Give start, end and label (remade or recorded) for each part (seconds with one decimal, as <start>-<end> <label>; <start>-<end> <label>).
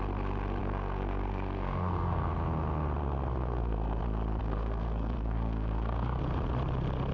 0.0-0.6 recorded; 0.6-2.3 remade; 2.3-3.0 recorded; 3.0-4.0 remade; 4.0-4.4 recorded; 4.4-6.2 remade; 6.2-7.1 recorded